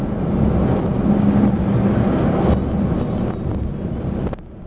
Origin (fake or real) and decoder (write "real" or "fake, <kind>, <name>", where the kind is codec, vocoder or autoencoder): real